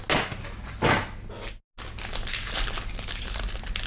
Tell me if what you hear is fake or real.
real